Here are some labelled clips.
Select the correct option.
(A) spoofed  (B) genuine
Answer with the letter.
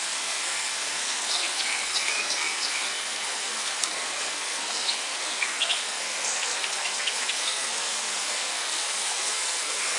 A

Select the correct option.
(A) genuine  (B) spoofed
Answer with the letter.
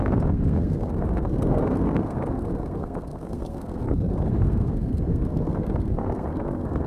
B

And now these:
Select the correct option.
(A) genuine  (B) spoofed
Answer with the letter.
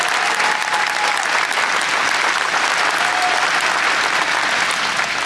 A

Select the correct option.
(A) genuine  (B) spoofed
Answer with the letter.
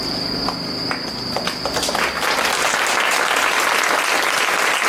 A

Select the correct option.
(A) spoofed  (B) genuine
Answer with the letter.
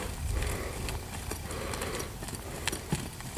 B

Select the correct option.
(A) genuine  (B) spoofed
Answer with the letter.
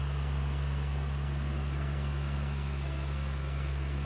B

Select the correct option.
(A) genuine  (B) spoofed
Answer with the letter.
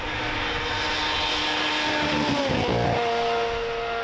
A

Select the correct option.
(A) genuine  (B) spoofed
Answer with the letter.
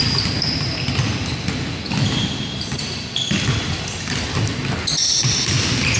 A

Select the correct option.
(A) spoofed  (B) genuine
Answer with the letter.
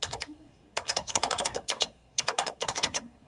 A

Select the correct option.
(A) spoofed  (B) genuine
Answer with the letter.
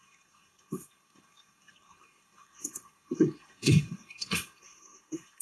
A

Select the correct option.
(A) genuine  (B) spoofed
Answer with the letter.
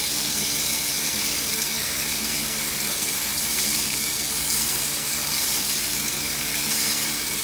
B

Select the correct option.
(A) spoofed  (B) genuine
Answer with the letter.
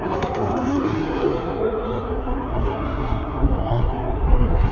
A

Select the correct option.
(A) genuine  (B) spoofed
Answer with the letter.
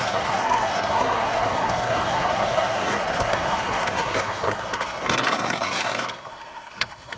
B